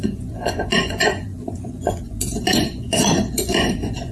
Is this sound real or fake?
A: fake